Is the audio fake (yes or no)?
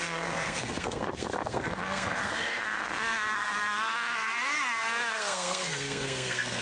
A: yes